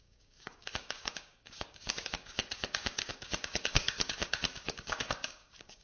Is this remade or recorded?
remade